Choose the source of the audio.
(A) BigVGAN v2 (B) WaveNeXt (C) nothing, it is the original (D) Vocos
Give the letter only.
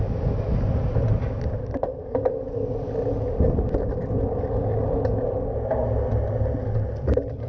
C